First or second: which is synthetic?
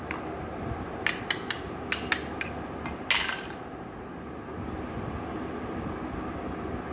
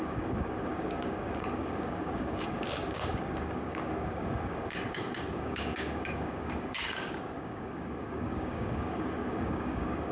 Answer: second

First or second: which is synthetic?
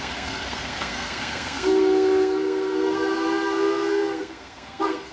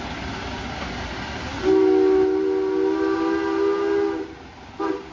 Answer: first